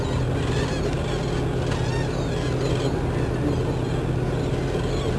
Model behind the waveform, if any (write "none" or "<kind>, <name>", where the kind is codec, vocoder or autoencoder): none